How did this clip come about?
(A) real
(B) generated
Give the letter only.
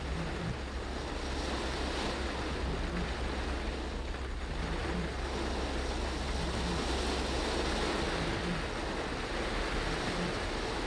A